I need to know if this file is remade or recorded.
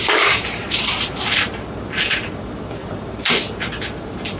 remade